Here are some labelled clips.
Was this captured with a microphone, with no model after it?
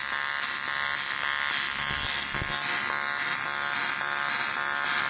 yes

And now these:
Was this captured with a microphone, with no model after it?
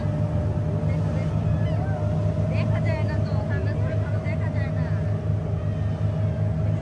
yes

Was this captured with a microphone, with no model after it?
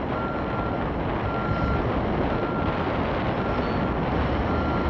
yes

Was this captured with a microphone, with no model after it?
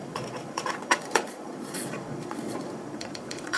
no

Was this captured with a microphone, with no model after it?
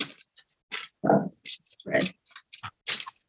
yes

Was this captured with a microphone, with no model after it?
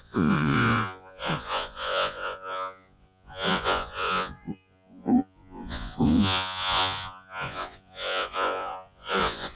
no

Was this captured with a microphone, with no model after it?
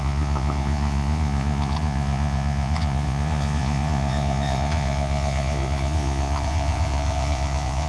no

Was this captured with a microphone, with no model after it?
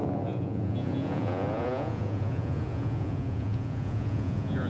no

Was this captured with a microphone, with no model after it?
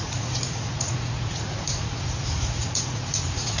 no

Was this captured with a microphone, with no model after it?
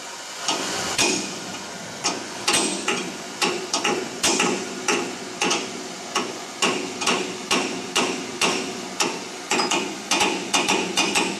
no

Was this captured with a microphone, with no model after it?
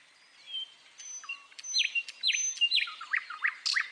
yes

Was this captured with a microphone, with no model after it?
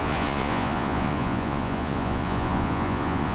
no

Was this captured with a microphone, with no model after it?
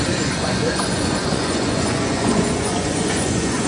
no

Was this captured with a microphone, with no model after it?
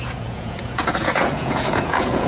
no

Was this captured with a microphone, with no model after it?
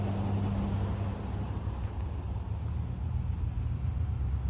yes